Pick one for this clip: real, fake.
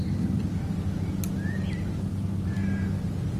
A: real